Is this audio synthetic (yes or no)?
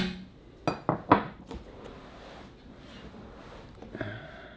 no